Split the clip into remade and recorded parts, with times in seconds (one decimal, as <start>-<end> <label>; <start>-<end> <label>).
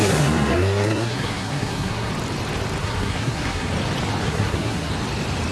0.0-2.1 remade; 2.1-2.8 recorded; 2.8-3.7 remade; 3.7-4.2 recorded; 4.2-4.9 remade; 4.9-5.5 recorded